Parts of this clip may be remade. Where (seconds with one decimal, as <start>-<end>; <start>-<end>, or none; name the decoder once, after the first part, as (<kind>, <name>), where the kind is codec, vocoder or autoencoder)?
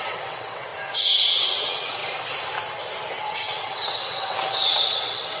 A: 0.0-0.7 (vocoder, WaveNeXt); 1.3-2.0; 3.2-5.4